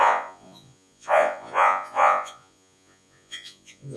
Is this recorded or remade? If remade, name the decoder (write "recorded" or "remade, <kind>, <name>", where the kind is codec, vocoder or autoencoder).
remade, vocoder, Vocos